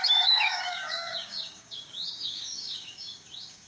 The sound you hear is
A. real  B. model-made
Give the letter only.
B